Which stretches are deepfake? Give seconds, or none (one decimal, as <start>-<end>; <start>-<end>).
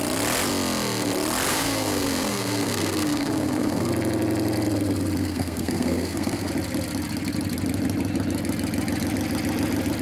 1.5-3.9; 5.2-6.5